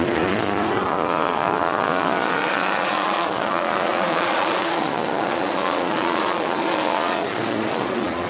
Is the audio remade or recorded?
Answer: remade